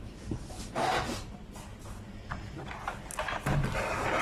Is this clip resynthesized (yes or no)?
no